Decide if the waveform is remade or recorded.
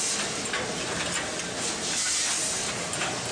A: recorded